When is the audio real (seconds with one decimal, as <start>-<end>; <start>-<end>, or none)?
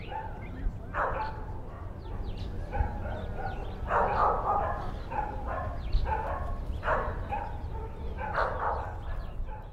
0.0-9.7